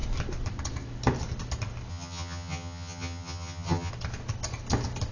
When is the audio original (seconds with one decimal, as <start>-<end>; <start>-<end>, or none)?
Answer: 0.0-1.9; 3.9-5.1